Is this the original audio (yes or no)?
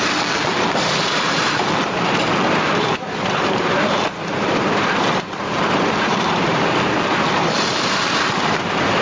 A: no